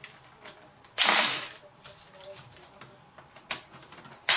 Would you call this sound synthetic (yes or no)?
no